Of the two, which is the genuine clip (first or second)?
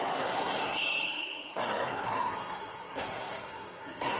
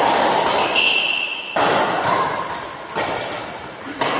second